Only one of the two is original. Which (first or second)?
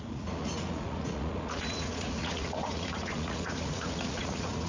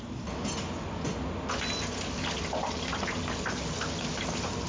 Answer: second